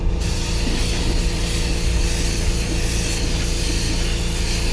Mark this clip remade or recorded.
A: recorded